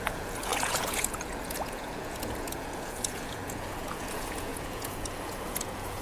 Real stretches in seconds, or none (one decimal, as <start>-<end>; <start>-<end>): none